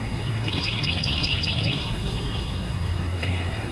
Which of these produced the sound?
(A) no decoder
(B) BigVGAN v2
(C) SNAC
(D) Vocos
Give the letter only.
C